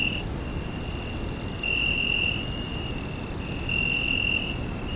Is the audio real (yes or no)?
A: yes